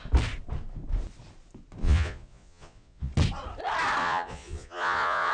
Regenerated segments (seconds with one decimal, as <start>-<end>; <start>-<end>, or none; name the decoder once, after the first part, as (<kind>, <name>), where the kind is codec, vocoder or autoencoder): 1.8-3.1 (vocoder, Vocos); 4.0-5.3

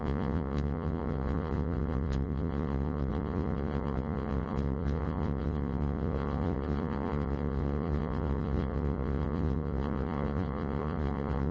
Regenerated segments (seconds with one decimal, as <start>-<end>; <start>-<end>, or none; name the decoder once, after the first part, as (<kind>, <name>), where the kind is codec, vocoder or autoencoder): 0.0-11.5 (vocoder, Vocos)

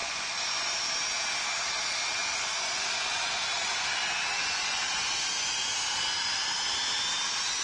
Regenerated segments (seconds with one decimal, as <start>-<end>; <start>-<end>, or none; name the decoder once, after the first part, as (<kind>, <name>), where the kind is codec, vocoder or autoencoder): 0.0-0.7 (vocoder, Vocos); 2.2-5.6

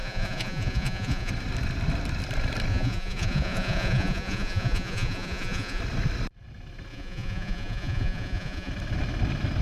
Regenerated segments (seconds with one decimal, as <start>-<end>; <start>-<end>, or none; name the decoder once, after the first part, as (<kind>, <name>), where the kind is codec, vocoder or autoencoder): 0.0-1.3 (vocoder, Vocos); 2.7-5.8; 6.9-8.7